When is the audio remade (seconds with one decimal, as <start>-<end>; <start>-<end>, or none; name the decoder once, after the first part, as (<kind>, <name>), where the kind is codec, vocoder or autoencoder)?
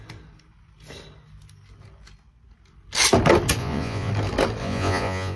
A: 3.6-4.1 (vocoder, Vocos); 4.6-5.4